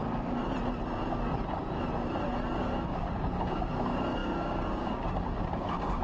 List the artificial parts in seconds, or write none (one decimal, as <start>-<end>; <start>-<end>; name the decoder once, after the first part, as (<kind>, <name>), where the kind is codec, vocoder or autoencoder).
0.0-0.4 (codec, DAC); 2.6-6.0